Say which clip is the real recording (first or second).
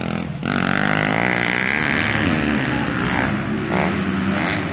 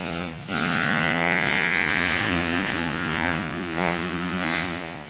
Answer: first